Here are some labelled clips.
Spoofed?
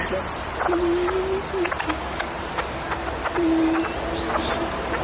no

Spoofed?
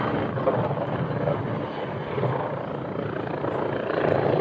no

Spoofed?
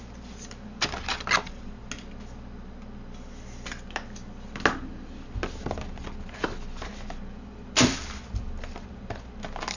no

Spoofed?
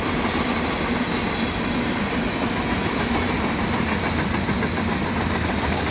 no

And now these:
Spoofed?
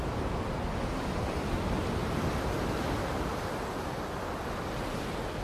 no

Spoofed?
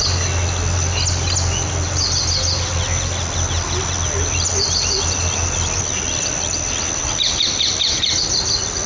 no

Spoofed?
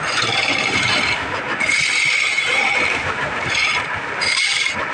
yes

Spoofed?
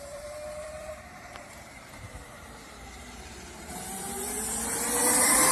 yes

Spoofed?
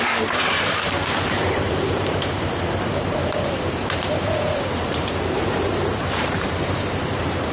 yes